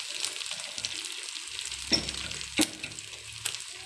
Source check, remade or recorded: recorded